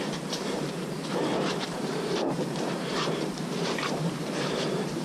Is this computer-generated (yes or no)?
yes